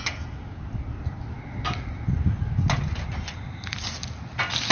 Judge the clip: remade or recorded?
recorded